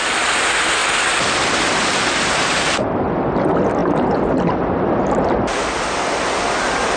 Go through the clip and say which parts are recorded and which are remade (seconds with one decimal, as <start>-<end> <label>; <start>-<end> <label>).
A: 0.0-7.0 recorded